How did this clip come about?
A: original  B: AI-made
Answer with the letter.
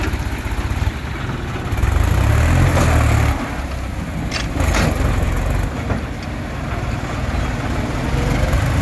A